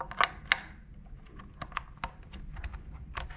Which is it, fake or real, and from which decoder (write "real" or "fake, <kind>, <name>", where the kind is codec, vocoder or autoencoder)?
real